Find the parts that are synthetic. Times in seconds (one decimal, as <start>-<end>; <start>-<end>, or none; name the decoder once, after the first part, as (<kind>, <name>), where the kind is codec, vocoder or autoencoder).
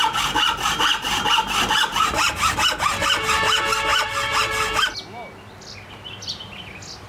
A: none